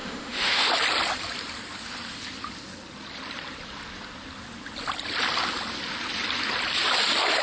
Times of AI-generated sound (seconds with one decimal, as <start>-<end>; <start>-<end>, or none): 0.0-0.7